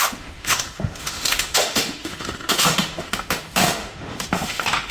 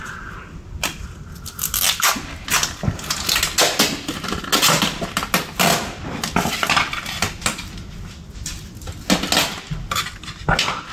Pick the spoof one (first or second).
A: first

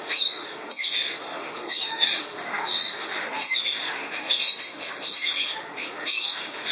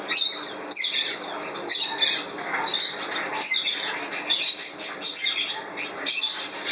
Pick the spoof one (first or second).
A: first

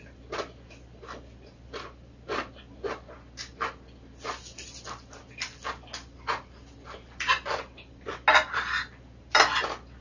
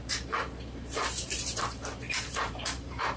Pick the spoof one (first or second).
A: second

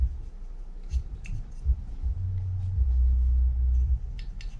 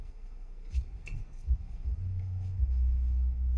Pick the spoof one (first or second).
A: second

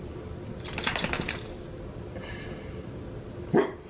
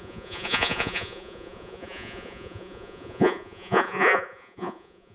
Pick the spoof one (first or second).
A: second